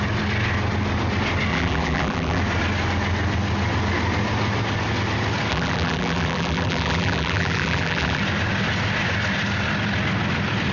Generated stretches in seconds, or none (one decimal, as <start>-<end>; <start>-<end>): 1.5-2.4; 5.5-8.2